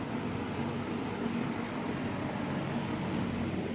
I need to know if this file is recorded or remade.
recorded